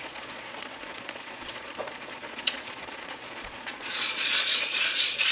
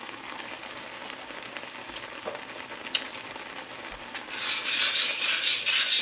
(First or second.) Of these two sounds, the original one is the second